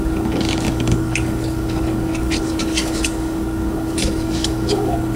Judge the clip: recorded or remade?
remade